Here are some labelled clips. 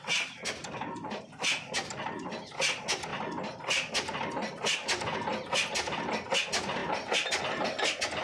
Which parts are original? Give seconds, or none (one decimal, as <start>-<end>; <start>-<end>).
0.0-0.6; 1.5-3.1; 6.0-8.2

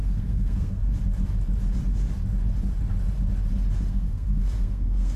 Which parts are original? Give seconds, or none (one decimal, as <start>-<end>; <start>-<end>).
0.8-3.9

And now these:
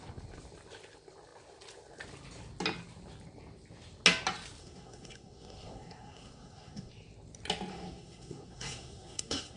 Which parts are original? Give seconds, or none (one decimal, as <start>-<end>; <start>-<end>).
0.0-4.6; 6.9-7.7

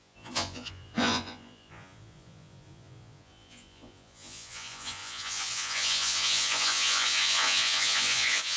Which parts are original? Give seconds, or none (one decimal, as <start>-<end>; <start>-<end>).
none

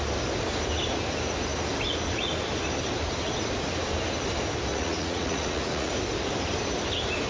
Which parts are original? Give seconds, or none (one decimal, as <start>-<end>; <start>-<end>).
0.0-4.7; 5.9-7.3

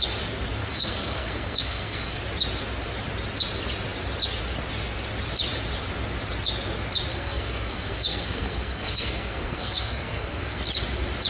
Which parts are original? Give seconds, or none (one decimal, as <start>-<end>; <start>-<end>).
0.0-0.6; 2.2-7.1; 10.6-11.3

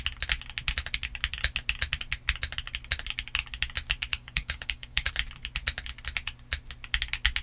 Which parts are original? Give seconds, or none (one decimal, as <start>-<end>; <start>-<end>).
0.0-4.1; 5.1-7.4

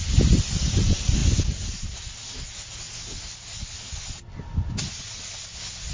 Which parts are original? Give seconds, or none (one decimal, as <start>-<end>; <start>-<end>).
0.0-5.9